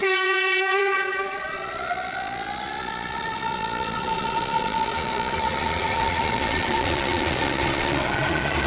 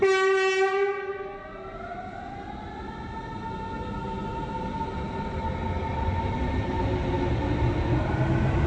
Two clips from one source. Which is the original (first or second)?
second